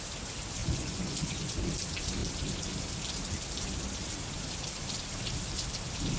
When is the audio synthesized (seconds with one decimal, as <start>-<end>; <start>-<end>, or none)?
0.6-1.5